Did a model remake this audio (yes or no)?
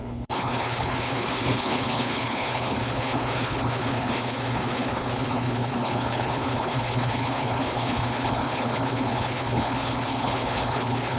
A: yes